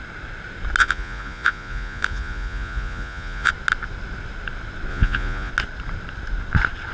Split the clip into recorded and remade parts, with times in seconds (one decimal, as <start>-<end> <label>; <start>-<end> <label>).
0.0-0.8 recorded; 0.8-3.5 remade; 3.5-4.9 recorded; 4.9-5.5 remade; 5.5-6.9 recorded